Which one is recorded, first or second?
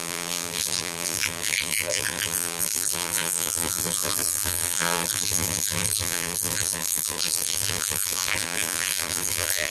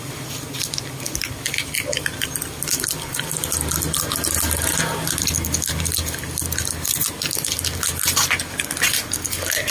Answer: second